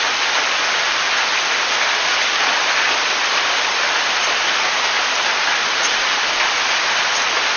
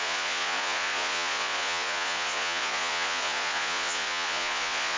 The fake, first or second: second